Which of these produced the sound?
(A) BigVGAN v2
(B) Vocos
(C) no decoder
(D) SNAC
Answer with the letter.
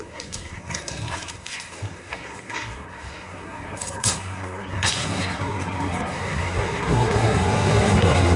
D